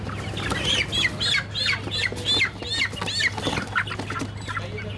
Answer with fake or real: real